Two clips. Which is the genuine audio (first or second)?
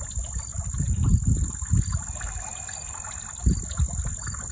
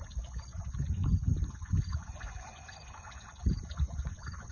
first